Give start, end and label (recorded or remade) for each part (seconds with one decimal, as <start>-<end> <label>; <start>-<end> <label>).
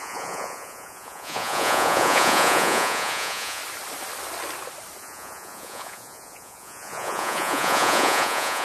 0.0-3.6 remade; 3.6-5.0 recorded; 5.0-8.6 remade